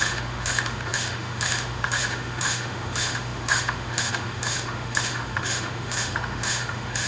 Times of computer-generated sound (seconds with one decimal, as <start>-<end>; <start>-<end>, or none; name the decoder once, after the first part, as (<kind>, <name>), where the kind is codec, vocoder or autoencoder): 0.0-7.1 (autoencoder, DAC-VAE)